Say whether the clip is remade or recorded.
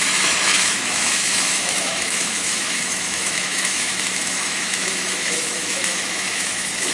remade